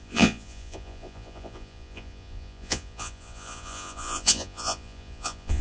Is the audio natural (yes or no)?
no